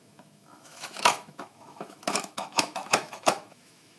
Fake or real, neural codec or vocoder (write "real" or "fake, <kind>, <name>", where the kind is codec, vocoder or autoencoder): fake, autoencoder, DAC-VAE